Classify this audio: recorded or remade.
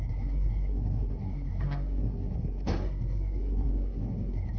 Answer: remade